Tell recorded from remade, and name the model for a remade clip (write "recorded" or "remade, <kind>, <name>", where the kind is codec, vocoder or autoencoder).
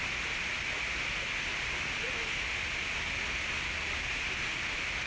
recorded